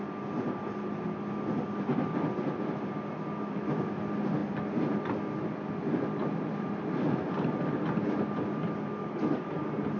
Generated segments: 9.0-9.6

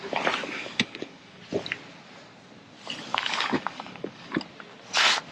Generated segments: 0.4-1.4; 3.1-4.4